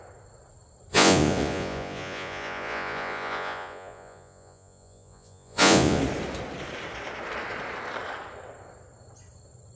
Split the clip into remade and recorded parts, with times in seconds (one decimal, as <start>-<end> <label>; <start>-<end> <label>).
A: 0.0-0.9 recorded; 0.9-6.0 remade; 6.0-9.8 recorded

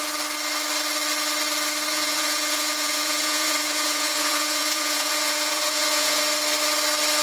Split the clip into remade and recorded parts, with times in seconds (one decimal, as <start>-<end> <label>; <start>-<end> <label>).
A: 0.0-1.9 recorded; 1.9-6.2 remade; 6.2-7.2 recorded

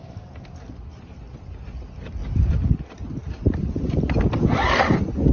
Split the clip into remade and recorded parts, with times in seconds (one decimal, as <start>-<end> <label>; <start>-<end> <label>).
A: 0.0-5.3 recorded

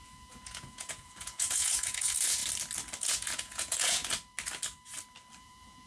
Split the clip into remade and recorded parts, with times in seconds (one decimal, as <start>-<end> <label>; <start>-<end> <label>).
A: 0.0-2.4 remade; 2.4-3.0 recorded; 3.0-4.0 remade; 4.0-5.4 recorded; 5.4-5.9 remade

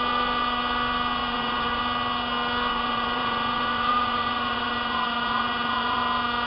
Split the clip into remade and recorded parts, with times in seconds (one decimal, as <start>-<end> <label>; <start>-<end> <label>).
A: 0.0-1.2 recorded; 1.2-1.8 remade; 1.8-2.7 recorded; 2.7-6.0 remade; 6.0-6.5 recorded

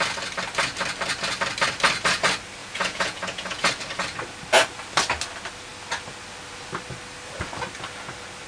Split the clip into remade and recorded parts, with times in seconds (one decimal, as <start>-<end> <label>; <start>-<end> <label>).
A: 0.0-2.6 recorded; 2.6-3.7 remade; 3.7-8.5 recorded